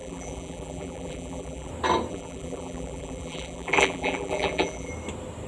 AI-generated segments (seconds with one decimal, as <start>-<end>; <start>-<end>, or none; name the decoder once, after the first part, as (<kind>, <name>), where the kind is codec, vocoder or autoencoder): 0.0-1.7 (vocoder, BigVGAN v2); 2.1-4.9